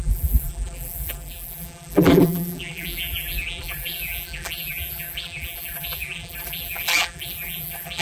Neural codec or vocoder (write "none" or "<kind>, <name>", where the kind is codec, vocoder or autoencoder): vocoder, BigVGAN v2